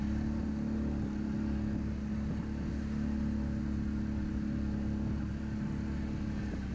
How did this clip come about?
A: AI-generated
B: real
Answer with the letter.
B